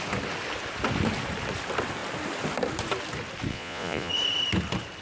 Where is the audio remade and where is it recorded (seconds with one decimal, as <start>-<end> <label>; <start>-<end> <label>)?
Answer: 0.0-3.5 recorded; 3.5-4.1 remade; 4.1-5.0 recorded